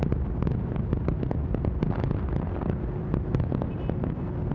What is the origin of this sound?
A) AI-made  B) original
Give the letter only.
B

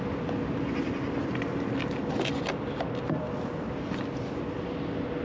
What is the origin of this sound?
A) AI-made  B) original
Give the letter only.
B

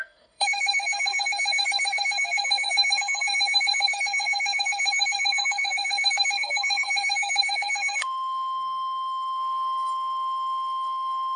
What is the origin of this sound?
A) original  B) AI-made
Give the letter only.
B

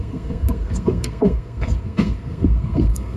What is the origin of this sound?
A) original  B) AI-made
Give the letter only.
B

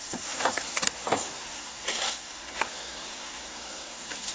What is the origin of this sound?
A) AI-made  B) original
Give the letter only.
A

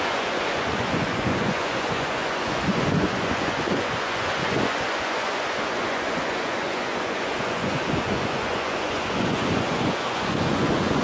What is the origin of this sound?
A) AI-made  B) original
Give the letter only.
A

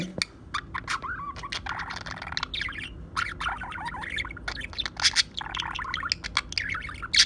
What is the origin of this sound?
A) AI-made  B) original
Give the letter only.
B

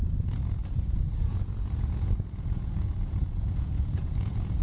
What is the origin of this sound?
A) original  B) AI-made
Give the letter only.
B